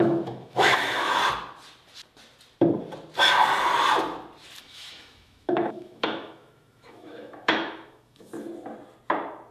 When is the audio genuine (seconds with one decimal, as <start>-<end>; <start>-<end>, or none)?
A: 1.2-4.6; 8.3-9.5